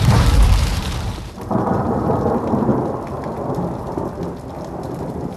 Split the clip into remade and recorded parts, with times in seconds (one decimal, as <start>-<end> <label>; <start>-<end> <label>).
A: 0.0-2.7 remade; 2.7-5.0 recorded; 5.0-5.4 remade